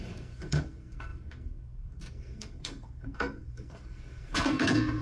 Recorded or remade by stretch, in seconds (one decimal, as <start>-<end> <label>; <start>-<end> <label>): 0.0-5.0 remade